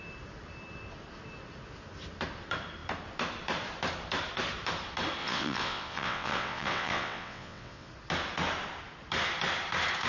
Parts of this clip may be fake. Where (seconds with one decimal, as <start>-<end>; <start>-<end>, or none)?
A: 5.2-7.9